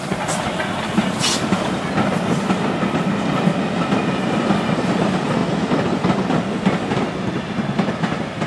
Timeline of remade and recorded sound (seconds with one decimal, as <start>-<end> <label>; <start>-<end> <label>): 0.0-8.5 recorded